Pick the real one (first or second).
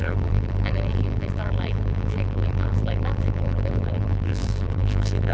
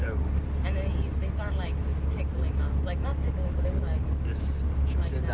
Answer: second